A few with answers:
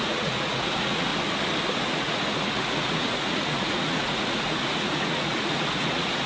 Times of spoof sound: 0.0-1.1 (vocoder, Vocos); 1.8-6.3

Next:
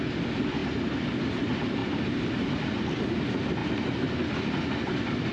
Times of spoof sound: 1.8-2.7 (vocoder, BigVGAN v2)

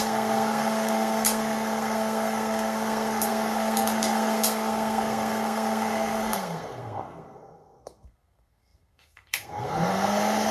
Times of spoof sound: 0.0-10.5 (codec, SNAC)

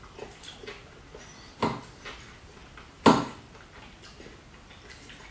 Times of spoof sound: none

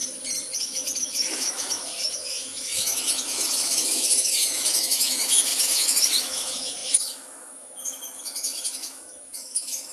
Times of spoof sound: 0.6-9.9 (autoencoder, DAC-VAE)

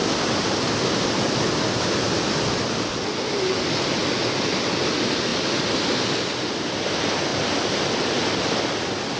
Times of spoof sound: none

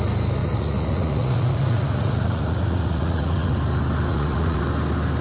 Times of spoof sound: 0.4-3.5 (vocoder, Vocos); 4.1-4.6